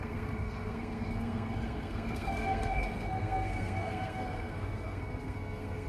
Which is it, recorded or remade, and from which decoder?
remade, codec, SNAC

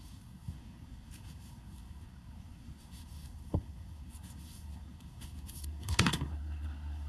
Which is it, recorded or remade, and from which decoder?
remade, codec, SNAC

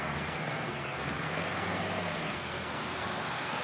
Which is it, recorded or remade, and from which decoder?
remade, codec, SNAC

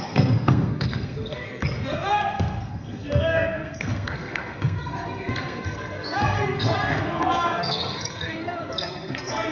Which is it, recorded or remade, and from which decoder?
remade, codec, SNAC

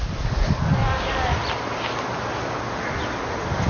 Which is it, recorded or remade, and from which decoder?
recorded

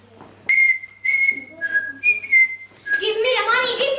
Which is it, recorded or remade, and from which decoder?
recorded